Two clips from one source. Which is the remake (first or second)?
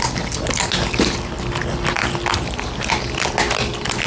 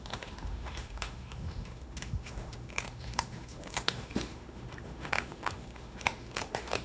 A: second